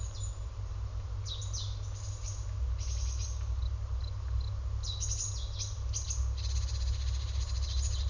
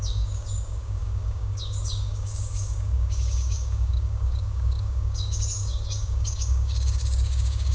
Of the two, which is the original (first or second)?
first